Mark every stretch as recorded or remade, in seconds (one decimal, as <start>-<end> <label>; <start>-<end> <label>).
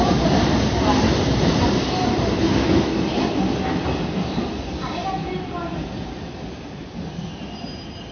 0.0-5.0 recorded; 5.0-5.6 remade; 5.6-8.1 recorded